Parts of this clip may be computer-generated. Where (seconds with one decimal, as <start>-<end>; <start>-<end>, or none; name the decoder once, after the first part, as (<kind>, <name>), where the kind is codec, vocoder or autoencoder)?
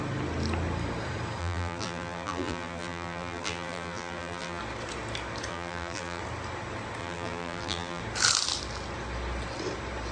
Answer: 1.4-4.6 (vocoder, BigVGAN v2); 5.5-6.2; 7.0-8.0